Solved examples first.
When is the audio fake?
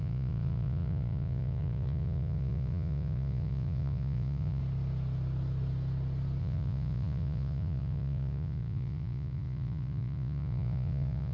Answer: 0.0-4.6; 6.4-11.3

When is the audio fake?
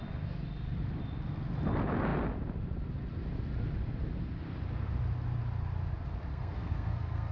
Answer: 6.3-7.3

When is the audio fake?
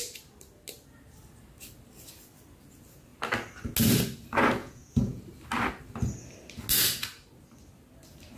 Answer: 4.6-5.2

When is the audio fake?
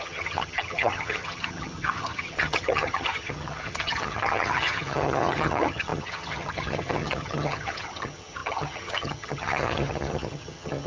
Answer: 0.0-10.9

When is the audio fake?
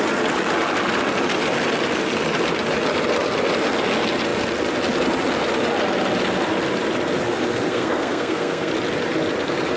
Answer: 7.7-8.7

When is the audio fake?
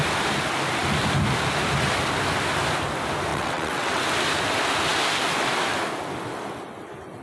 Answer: 3.3-4.0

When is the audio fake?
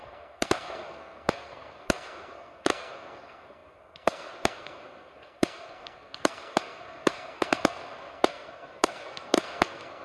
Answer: 0.0-10.0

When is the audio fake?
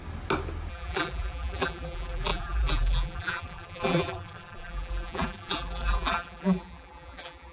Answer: 0.7-7.5